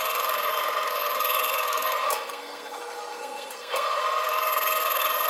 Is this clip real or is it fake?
fake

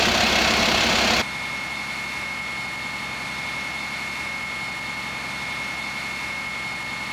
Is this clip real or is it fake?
real